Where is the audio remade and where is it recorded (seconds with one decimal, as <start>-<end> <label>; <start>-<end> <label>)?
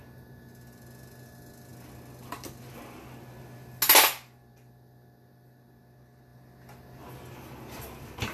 0.0-8.3 recorded